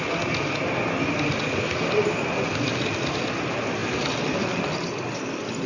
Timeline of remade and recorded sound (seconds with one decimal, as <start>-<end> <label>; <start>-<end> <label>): 0.0-5.7 recorded